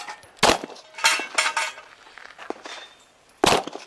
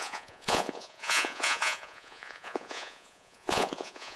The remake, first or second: second